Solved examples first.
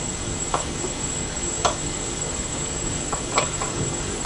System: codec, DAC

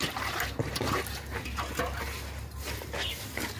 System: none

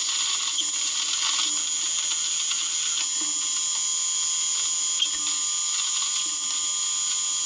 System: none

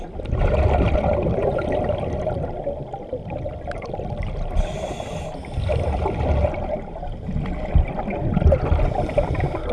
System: none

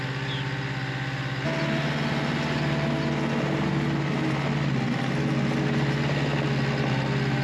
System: none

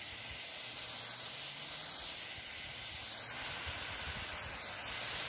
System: none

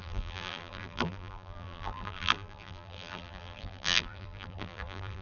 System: vocoder, BigVGAN v2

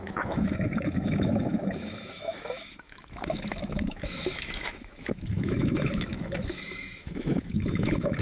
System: autoencoder, DAC-VAE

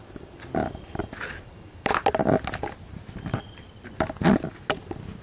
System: none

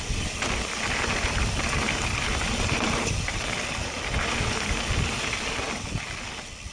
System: none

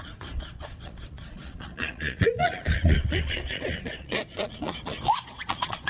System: vocoder, Vocos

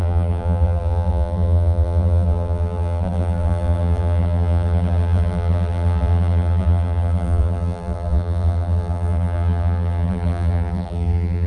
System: vocoder, BigVGAN v2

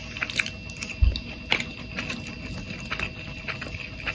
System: none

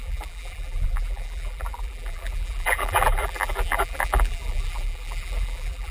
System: vocoder, BigVGAN v2